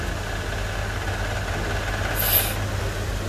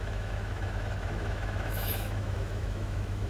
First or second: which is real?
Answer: first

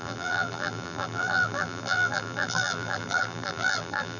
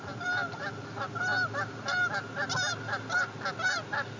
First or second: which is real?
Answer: second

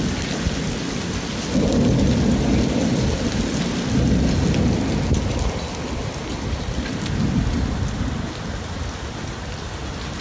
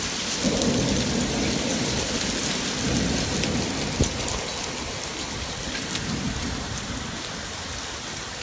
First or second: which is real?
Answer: first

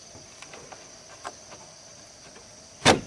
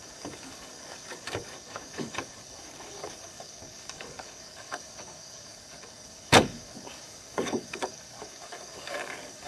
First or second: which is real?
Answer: first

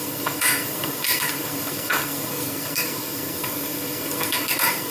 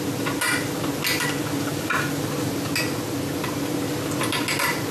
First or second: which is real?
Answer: second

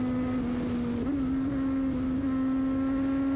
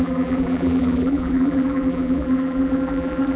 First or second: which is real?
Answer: first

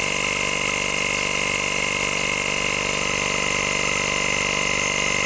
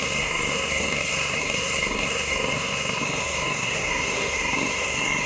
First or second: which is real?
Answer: first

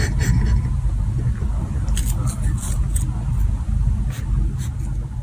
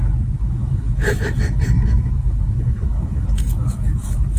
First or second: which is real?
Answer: first